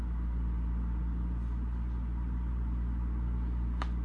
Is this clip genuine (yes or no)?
yes